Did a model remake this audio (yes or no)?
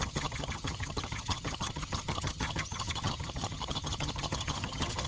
yes